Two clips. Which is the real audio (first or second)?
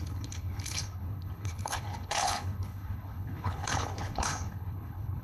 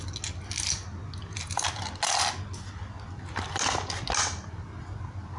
second